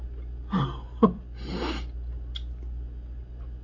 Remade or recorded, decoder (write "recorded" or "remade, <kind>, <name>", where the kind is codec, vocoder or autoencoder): recorded